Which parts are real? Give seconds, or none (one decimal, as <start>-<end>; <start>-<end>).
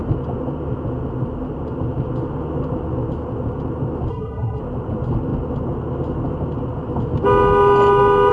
0.0-4.1; 4.6-8.3